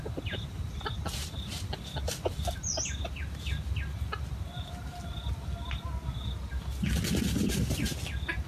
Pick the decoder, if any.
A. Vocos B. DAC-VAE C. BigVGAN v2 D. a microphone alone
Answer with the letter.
D